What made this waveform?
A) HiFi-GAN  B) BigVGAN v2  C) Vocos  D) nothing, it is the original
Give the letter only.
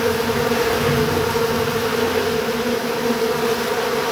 D